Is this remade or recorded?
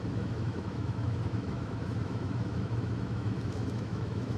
remade